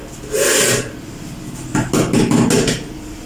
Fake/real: real